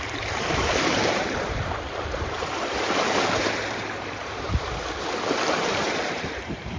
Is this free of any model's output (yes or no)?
no